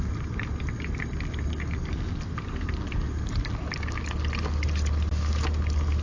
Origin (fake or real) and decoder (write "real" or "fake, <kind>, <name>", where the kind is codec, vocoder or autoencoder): real